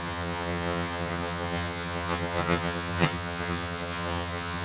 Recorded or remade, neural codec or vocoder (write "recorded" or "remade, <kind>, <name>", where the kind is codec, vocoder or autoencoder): remade, vocoder, HiFi-GAN